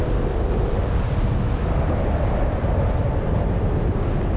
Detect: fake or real real